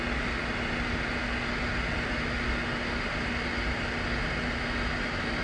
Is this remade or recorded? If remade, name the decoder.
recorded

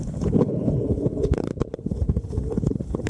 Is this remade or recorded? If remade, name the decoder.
remade, codec, HILCodec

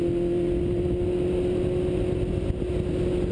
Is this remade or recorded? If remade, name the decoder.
recorded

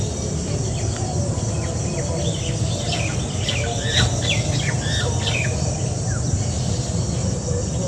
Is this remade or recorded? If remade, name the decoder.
recorded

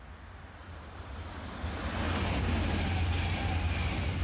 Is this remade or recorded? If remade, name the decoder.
recorded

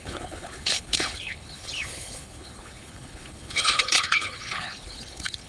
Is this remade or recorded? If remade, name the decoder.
remade, codec, HILCodec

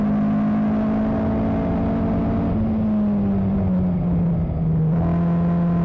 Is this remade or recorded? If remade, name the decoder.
recorded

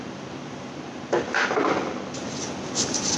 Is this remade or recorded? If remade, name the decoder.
recorded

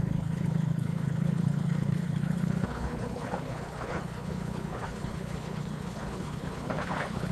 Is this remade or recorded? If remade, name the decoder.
remade, codec, HILCodec